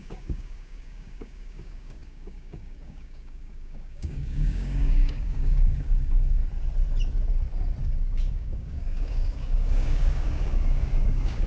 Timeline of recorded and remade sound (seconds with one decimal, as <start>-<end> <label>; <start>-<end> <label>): 0.0-6.4 remade; 6.4-7.8 recorded; 7.8-11.5 remade